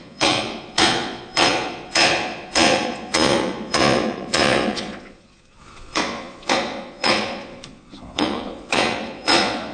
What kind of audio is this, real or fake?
fake